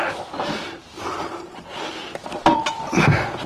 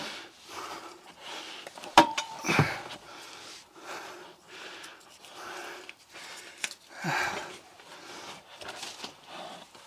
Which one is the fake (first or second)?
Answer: second